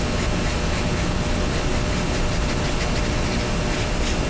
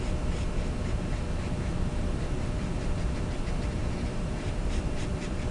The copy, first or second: second